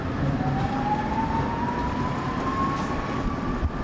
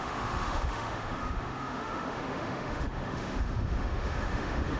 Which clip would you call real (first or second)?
first